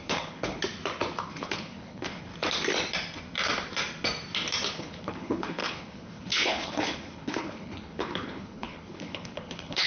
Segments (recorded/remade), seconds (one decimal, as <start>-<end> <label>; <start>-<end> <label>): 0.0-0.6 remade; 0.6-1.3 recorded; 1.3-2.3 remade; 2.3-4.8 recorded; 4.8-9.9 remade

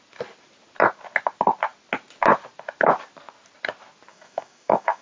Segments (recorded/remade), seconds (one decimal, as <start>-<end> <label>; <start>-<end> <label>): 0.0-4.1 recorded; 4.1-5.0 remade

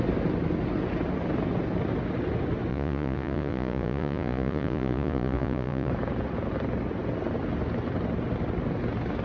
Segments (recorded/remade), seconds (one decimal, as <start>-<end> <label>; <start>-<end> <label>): 0.0-2.7 recorded; 2.7-5.9 remade; 5.9-9.2 recorded

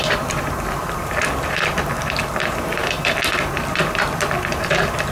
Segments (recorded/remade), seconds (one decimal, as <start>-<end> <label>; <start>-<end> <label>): 0.0-1.7 remade; 1.7-2.3 recorded; 2.3-2.8 remade; 2.8-4.5 recorded; 4.5-5.1 remade

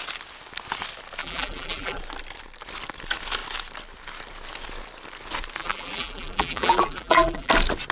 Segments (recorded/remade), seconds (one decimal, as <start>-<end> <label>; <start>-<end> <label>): 0.0-1.2 recorded; 1.2-2.0 remade; 2.0-5.6 recorded; 5.6-7.5 remade; 7.5-7.9 recorded

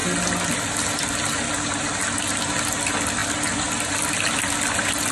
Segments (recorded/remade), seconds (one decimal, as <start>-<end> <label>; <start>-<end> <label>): 0.0-5.1 recorded